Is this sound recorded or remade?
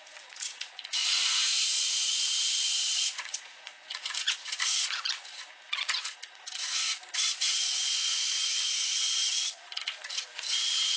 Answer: remade